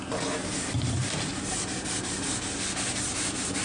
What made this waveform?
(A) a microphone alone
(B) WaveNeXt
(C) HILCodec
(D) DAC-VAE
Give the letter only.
A